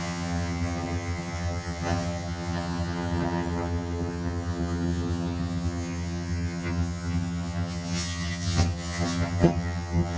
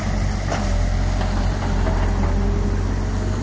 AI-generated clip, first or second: first